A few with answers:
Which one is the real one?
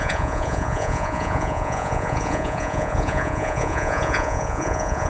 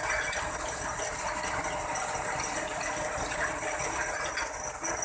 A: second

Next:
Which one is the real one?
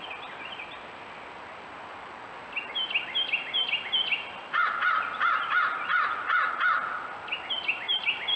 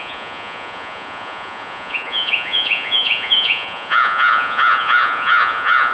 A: first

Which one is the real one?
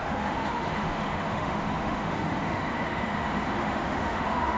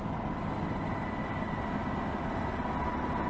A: second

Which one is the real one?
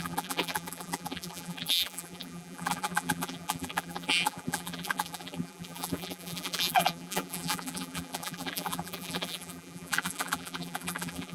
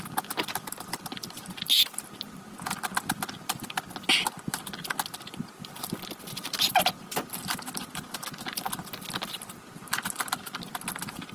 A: second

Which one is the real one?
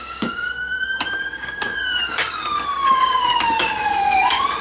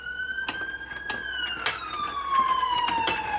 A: second